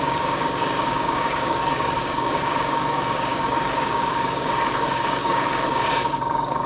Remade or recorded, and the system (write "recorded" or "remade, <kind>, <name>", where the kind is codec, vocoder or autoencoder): remade, codec, DAC